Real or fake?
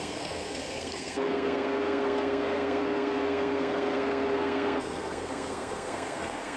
fake